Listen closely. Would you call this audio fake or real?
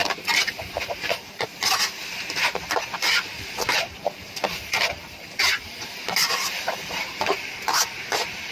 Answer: fake